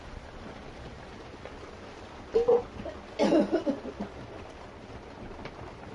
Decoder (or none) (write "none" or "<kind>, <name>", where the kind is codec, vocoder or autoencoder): none